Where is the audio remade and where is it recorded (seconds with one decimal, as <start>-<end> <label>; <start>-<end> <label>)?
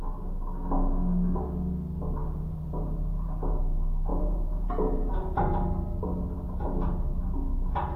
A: 0.0-2.2 recorded; 2.2-3.6 remade; 3.6-4.1 recorded; 4.1-5.4 remade; 5.4-8.0 recorded